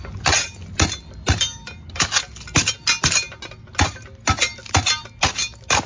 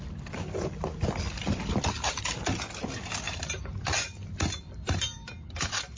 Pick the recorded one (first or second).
first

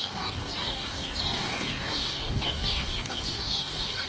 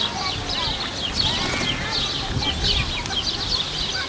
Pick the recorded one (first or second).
second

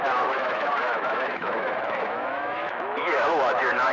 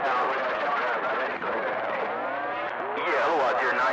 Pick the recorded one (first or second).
second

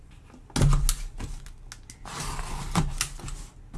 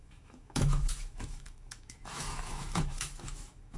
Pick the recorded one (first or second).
first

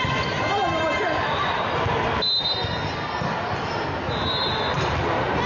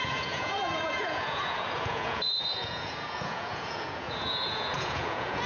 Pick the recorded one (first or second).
first